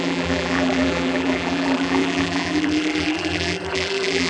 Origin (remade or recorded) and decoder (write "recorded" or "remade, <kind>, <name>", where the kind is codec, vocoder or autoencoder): remade, vocoder, BigVGAN v2